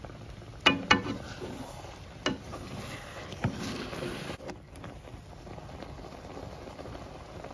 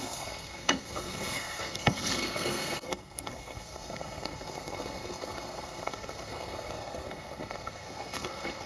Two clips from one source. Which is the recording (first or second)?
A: first